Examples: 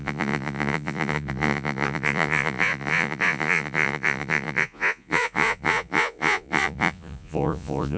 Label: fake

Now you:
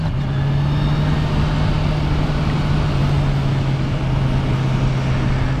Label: real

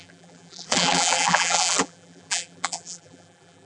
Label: fake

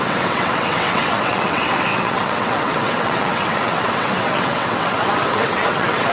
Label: fake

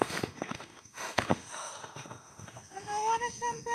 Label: fake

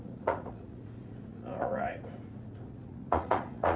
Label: fake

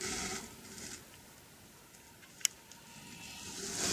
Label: real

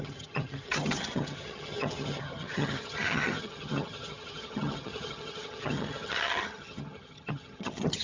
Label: fake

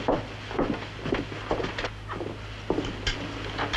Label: real